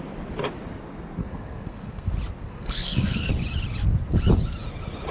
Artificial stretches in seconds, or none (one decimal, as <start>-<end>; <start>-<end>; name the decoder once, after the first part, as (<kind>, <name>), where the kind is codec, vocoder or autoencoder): 1.2-2.1 (codec, SNAC); 2.5-3.3